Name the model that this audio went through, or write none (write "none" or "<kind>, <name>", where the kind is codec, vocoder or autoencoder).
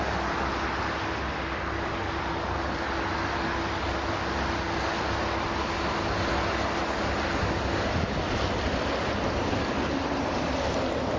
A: none